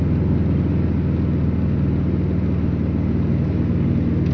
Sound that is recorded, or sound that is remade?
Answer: recorded